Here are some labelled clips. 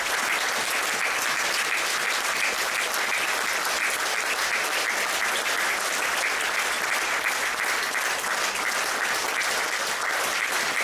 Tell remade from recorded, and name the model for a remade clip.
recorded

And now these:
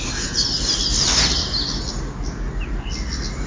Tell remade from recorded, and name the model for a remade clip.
recorded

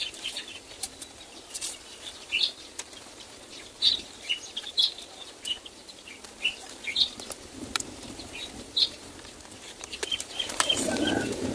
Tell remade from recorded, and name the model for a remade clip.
remade, vocoder, BigVGAN v2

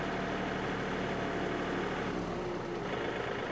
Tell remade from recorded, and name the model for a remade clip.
recorded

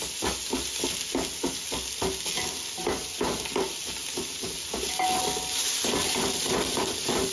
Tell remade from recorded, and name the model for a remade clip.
recorded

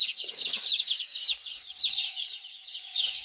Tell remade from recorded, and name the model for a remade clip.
remade, codec, DAC